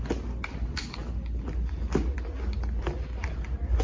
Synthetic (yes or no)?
no